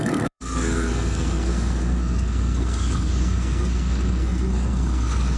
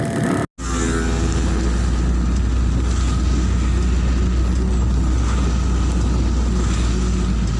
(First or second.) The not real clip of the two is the first